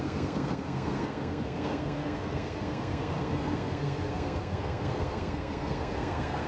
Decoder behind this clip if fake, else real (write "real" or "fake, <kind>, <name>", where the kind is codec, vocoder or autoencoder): fake, codec, SNAC